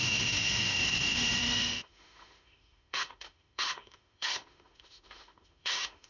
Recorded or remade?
remade